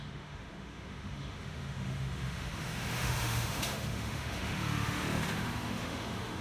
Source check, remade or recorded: remade